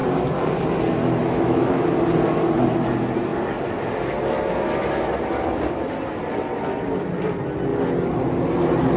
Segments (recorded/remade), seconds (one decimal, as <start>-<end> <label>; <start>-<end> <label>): 0.0-1.2 recorded; 1.2-1.9 remade; 1.9-9.0 recorded